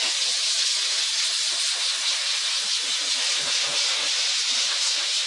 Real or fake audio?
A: real